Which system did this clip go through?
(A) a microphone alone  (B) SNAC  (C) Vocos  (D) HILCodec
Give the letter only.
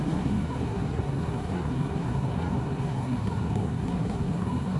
B